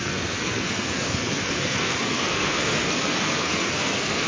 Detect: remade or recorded remade